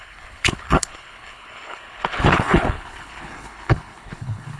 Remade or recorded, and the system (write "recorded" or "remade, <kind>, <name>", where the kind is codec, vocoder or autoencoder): remade, codec, HILCodec